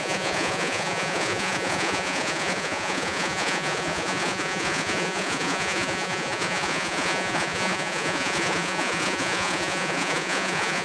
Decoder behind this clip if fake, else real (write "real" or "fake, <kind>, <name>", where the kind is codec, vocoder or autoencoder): fake, vocoder, Vocos